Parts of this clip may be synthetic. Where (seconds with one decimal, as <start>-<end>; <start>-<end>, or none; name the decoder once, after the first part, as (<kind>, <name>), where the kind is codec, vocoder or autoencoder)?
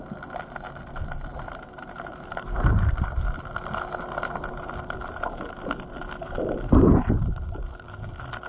1.3-2.7 (vocoder, BigVGAN v2); 6.2-8.1